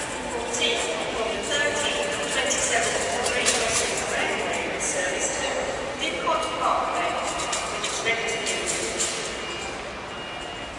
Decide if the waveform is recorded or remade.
recorded